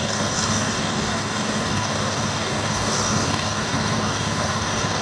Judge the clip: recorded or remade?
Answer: remade